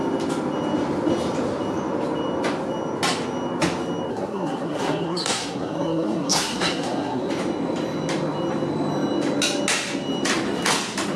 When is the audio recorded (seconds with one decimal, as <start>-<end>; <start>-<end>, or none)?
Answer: 0.0-4.1; 7.3-11.2